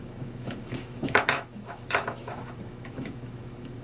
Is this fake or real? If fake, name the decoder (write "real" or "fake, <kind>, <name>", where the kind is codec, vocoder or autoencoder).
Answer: fake, autoencoder, DAC-VAE